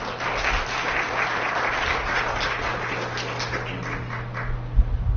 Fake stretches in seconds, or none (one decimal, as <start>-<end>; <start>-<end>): none